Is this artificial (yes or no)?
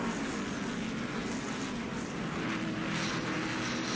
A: no